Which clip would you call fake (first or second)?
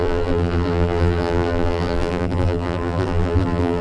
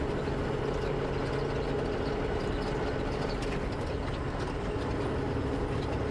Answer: first